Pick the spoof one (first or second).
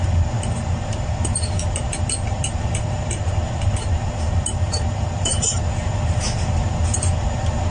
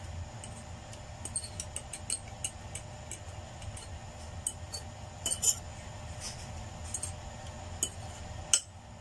first